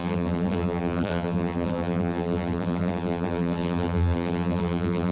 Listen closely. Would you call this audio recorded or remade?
remade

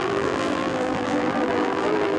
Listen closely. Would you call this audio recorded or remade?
remade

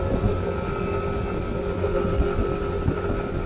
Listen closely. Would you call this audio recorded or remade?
recorded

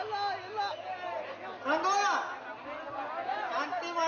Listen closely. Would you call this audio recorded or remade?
recorded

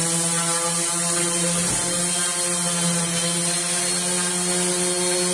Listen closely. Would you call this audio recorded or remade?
recorded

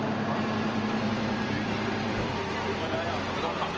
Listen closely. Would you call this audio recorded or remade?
remade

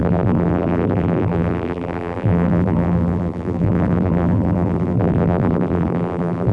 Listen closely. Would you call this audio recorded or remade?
remade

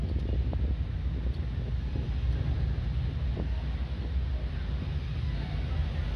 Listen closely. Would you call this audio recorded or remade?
recorded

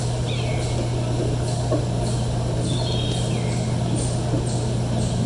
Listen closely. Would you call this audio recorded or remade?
recorded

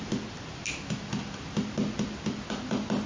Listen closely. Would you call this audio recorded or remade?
recorded